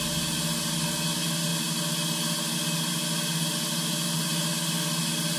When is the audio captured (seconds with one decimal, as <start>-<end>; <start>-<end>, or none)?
0.0-5.4